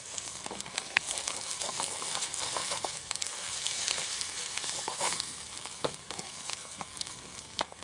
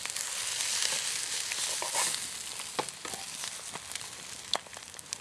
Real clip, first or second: second